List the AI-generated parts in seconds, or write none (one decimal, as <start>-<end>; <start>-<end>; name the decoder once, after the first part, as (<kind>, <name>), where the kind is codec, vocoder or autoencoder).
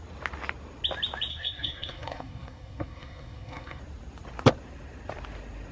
1.3-3.8 (codec, SNAC)